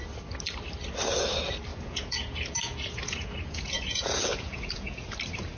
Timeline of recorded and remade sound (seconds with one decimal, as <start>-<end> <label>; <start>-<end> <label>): 0.0-1.7 recorded; 1.7-5.1 remade; 5.1-5.6 recorded